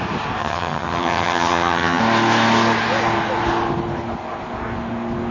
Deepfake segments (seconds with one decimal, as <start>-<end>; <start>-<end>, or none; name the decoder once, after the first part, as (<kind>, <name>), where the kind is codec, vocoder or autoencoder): 0.4-2.0 (vocoder, HiFi-GAN)